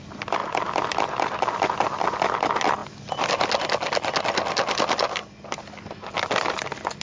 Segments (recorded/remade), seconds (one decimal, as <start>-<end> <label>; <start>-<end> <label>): 0.0-7.0 recorded